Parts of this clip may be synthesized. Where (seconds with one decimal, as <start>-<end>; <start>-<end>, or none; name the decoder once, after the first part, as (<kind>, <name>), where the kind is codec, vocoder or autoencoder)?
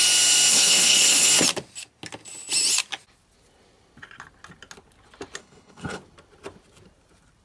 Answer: 0.5-1.3 (codec, HILCodec); 5.4-6.0